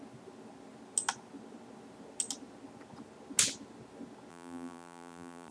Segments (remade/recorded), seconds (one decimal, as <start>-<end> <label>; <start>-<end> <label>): 0.0-4.3 recorded; 4.3-5.5 remade